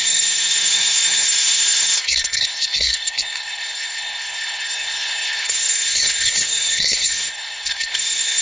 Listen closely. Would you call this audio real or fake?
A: fake